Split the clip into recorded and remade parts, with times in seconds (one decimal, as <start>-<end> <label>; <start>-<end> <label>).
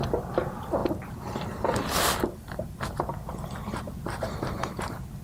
0.0-5.2 recorded